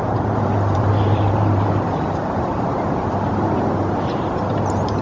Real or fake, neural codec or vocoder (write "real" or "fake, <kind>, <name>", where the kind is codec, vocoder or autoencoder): fake, vocoder, BigVGAN v2